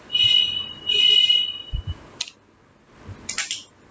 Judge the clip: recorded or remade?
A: recorded